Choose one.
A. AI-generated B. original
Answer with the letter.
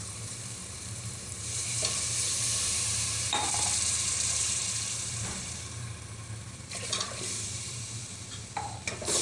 A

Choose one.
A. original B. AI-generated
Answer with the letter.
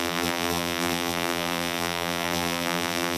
B